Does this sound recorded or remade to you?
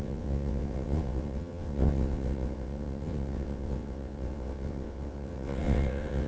remade